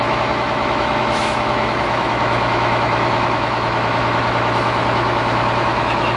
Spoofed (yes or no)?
yes